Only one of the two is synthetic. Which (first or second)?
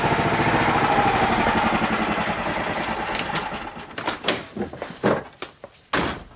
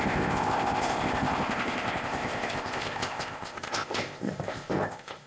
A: second